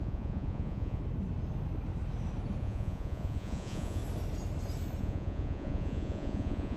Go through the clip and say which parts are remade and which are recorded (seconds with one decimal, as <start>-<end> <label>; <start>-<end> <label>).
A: 0.0-1.0 remade; 1.0-2.6 recorded; 2.6-4.0 remade; 4.0-5.0 recorded; 5.0-6.8 remade